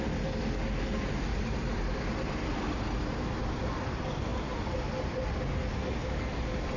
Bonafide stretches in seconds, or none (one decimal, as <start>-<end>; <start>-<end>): 0.0-1.3; 2.0-6.8